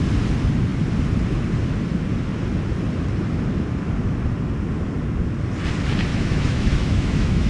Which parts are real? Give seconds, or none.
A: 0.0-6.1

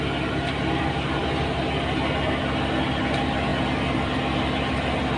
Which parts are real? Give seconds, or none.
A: 0.0-5.2

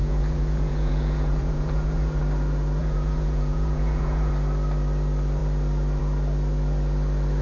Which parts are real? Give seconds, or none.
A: 2.2-2.8; 4.3-7.4